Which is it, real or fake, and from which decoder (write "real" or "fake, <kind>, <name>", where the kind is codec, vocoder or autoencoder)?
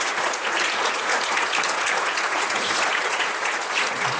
fake, vocoder, Vocos